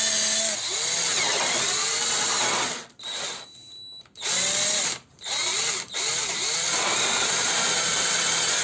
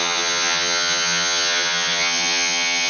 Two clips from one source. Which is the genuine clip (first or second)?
first